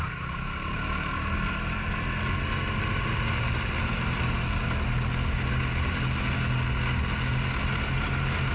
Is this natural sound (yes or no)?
yes